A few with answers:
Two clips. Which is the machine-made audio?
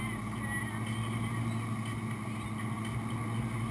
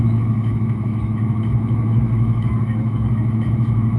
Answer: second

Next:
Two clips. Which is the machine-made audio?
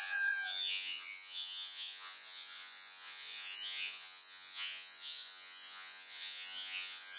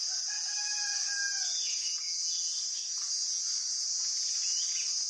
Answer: first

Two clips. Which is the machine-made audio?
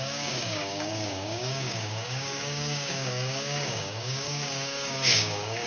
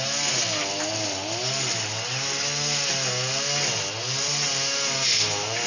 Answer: first